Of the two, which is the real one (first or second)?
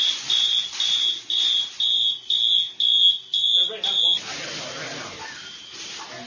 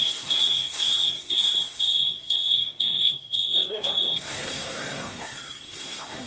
first